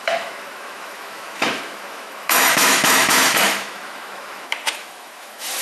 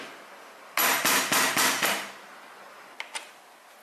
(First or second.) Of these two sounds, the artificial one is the first